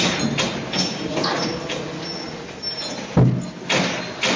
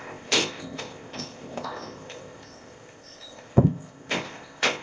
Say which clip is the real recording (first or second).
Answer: first